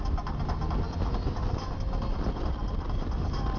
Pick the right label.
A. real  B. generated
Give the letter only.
A